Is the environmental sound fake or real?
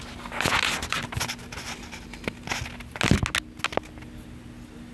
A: real